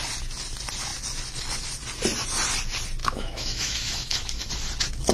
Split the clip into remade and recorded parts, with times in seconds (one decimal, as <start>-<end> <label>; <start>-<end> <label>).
0.0-3.0 recorded; 3.0-4.5 remade; 4.5-5.1 recorded